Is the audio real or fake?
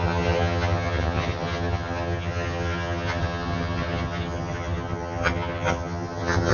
fake